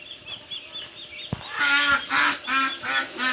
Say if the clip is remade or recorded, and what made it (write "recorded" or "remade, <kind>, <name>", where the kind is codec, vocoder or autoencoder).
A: recorded